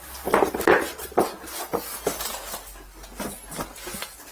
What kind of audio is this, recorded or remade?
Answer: recorded